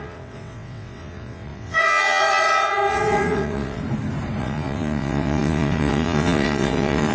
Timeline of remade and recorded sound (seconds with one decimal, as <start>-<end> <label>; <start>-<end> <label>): 0.0-3.8 remade; 3.8-4.4 recorded; 4.4-7.1 remade